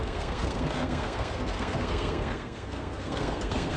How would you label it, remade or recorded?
remade